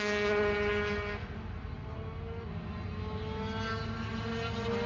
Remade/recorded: recorded